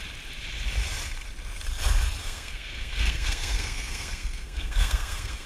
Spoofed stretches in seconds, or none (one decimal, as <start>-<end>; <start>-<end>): 2.2-5.5